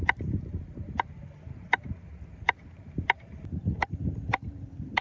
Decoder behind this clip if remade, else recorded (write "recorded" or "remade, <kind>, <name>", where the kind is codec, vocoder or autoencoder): recorded